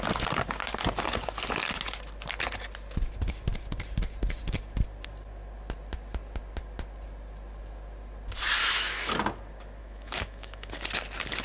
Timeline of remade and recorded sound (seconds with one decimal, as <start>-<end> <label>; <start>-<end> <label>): 0.0-8.6 recorded; 8.6-9.1 remade; 9.1-9.8 recorded; 9.8-10.7 remade; 10.7-11.4 recorded